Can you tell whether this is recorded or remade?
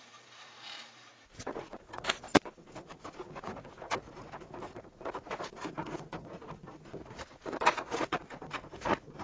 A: remade